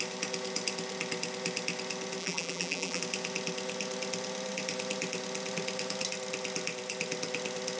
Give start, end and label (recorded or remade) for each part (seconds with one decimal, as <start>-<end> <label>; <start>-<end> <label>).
0.0-2.2 recorded; 2.2-3.0 remade; 3.0-7.8 recorded